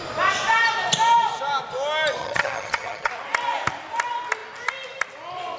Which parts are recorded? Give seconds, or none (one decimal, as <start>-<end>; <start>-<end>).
0.0-2.2; 3.1-5.6